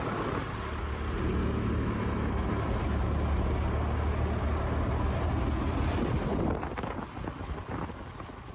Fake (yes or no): no